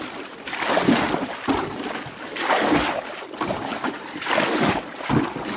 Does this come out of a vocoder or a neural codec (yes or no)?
no